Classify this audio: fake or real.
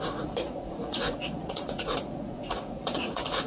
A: fake